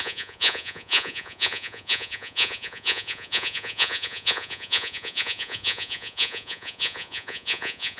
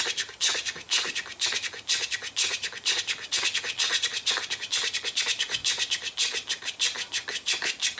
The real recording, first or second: second